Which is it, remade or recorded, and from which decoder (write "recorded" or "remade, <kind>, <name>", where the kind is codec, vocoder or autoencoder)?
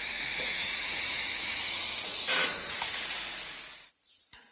remade, vocoder, Vocos